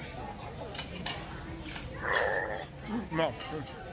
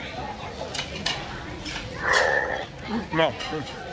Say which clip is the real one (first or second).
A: first